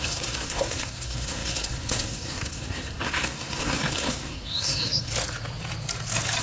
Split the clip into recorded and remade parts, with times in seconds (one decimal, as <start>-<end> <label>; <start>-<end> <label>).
0.0-5.1 remade; 5.1-6.4 recorded